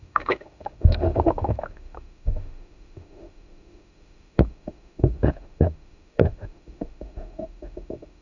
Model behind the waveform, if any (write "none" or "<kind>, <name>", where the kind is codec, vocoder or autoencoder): autoencoder, DAC-VAE